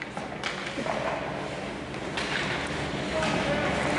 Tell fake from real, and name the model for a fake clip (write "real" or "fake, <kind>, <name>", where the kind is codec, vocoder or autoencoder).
real